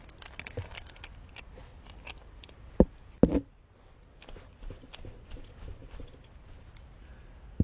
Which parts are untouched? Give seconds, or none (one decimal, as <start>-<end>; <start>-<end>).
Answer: 0.0-7.6